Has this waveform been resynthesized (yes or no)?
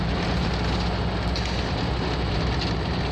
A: no